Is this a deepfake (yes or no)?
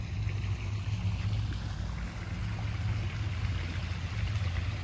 no